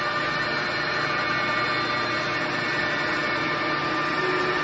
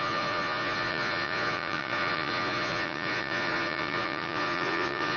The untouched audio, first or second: first